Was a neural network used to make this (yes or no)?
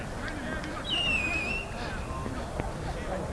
no